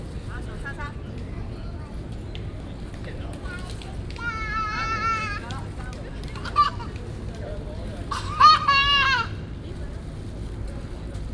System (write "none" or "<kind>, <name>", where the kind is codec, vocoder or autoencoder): none